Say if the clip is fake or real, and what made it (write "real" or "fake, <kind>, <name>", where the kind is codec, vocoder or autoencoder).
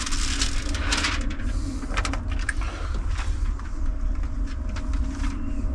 real